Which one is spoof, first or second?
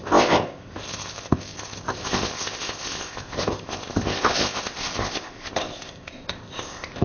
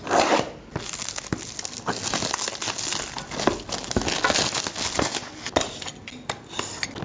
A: first